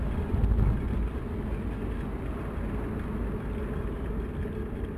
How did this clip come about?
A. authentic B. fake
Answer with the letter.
A